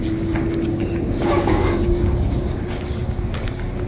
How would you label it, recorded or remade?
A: remade